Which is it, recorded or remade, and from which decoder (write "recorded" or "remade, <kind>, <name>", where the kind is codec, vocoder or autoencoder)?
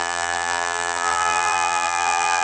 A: remade, vocoder, BigVGAN v2